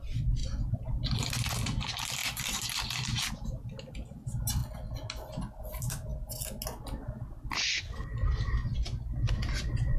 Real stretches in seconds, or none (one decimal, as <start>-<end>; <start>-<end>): 0.4-1.3; 4.6-5.3; 6.1-9.6